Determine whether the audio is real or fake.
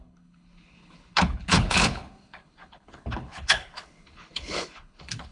fake